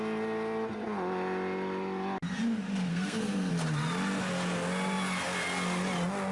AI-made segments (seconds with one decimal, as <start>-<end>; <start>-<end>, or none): 2.9-3.5